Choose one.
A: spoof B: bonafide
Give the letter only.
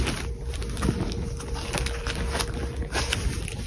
B